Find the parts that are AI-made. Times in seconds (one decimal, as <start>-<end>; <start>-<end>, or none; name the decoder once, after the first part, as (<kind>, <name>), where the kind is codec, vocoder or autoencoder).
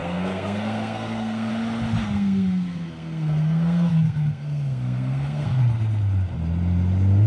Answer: 0.0-1.5 (codec, SNAC); 2.0-5.6